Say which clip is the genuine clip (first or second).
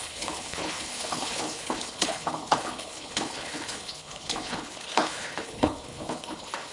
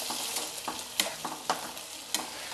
second